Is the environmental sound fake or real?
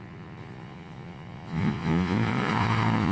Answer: fake